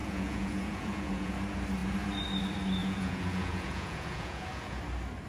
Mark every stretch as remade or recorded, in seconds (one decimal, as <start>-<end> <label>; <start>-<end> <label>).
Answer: 0.0-1.3 remade; 1.3-2.8 recorded; 2.8-4.8 remade; 4.8-5.3 recorded